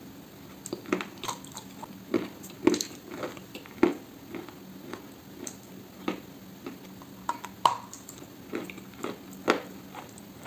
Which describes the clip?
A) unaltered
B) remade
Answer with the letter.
A